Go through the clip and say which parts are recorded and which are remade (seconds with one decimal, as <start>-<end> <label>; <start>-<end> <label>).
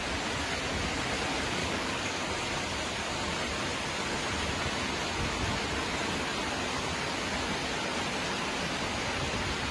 0.0-1.6 recorded; 1.6-2.2 remade; 2.2-9.7 recorded